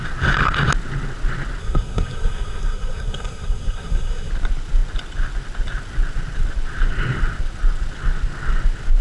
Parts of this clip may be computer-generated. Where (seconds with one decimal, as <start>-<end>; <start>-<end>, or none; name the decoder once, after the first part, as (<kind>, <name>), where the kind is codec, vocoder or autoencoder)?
1.6-4.3 (codec, SNAC)